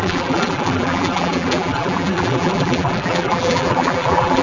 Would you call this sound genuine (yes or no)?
no